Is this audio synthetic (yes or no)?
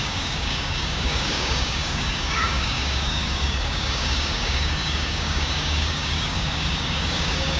yes